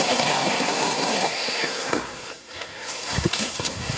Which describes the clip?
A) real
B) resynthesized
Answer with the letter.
B